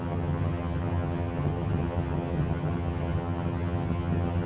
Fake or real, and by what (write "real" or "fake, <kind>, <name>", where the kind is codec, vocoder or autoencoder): fake, vocoder, HiFi-GAN